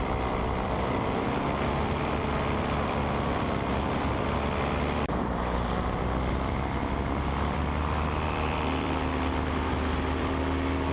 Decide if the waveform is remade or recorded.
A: remade